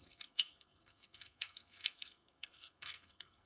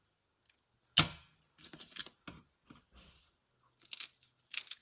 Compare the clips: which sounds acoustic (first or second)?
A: second